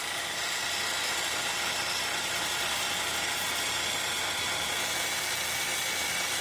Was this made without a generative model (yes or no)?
no